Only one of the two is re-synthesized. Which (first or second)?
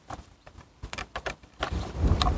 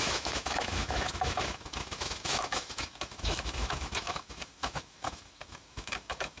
second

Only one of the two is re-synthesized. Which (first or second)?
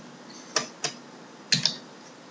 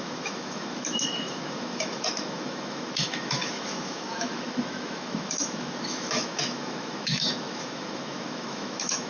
second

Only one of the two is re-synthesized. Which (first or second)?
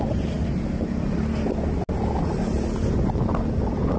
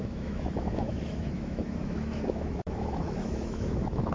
second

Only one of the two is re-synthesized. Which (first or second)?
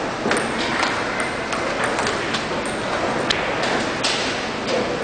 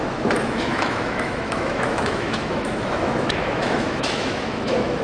second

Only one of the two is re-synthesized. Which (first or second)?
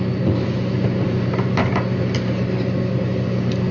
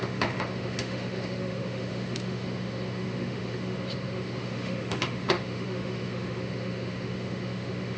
second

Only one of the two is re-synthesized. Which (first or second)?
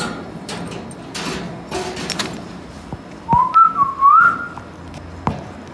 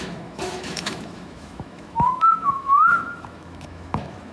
second